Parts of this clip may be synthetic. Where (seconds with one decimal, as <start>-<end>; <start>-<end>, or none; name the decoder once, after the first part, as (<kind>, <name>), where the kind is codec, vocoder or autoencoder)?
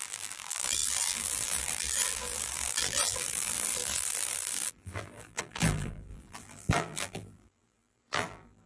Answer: 0.0-8.7 (vocoder, BigVGAN v2)